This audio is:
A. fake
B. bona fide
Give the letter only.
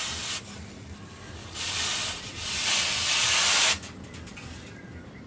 B